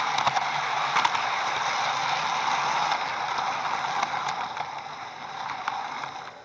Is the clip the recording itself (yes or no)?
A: yes